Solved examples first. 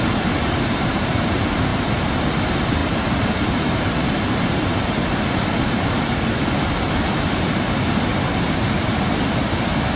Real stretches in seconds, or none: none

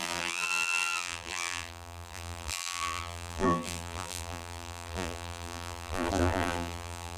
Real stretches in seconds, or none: none

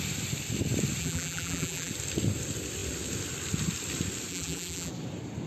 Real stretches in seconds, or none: 0.0-1.0; 1.9-4.3; 4.9-5.5

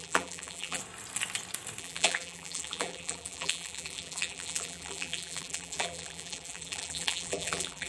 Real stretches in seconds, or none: 0.8-1.8

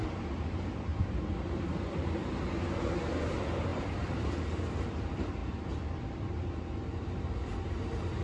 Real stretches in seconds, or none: none

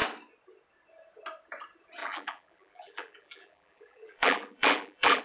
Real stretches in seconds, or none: 0.0-2.0